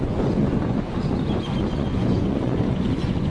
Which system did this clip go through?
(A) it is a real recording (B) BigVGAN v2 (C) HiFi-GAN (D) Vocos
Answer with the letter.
D